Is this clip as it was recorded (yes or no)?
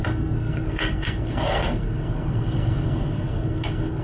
no